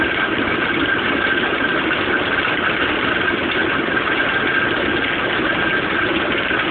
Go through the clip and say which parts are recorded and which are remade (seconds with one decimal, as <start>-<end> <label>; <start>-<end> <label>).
0.0-6.7 recorded